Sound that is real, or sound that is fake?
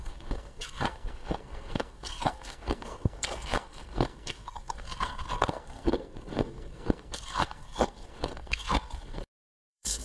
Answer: fake